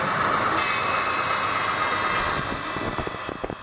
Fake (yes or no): no